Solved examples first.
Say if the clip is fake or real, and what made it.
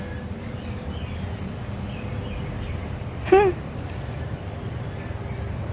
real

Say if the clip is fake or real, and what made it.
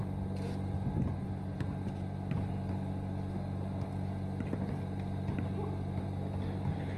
real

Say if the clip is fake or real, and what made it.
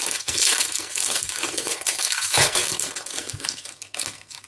fake, codec, SNAC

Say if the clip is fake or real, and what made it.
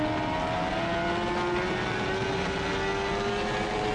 real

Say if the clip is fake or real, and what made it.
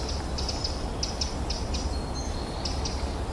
real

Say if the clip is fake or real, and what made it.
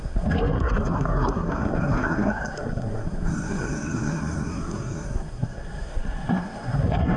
fake, codec, SNAC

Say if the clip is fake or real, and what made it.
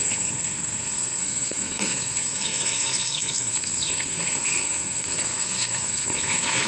fake, codec, SNAC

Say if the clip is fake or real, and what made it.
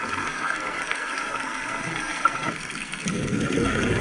fake, codec, SNAC